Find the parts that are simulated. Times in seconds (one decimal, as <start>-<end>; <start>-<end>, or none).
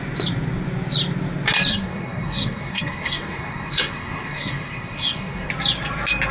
1.7-5.5